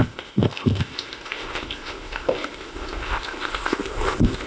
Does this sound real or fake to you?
fake